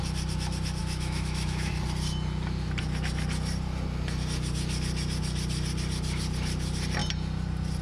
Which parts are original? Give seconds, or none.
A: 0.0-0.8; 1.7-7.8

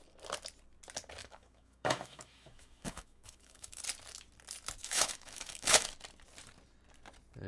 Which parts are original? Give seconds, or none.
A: 0.0-1.2; 3.8-4.8; 5.9-7.5

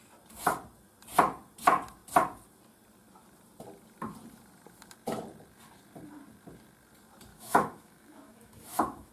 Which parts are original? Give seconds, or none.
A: 0.0-7.3

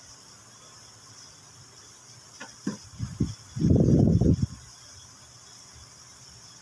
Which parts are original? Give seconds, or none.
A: none

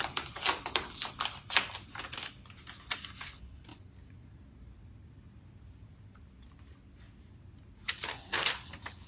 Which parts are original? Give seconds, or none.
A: 0.0-9.1